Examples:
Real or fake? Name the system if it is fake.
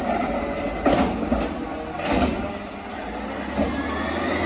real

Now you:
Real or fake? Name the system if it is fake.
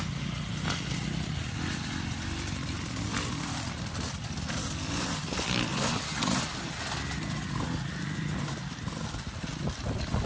real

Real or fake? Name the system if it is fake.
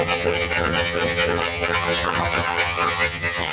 fake, vocoder, HiFi-GAN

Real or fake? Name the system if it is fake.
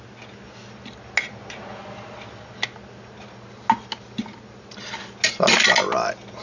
real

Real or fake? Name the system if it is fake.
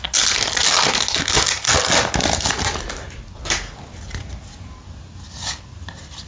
real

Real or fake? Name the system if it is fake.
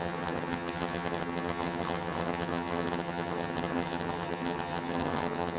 fake, vocoder, HiFi-GAN